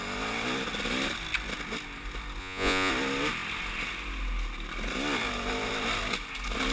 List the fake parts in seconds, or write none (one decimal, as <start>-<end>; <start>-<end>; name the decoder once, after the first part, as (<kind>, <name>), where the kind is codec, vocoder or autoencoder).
2.4-2.9 (vocoder, Vocos)